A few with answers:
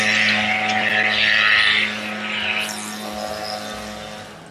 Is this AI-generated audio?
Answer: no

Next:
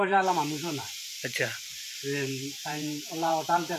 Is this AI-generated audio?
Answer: yes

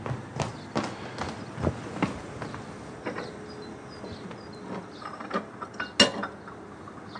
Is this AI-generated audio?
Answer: no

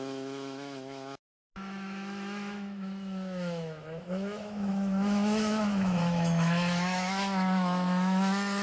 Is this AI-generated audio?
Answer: yes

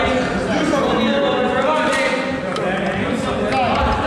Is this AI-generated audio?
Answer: no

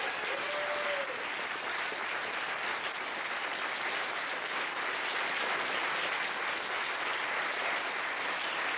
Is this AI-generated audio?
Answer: no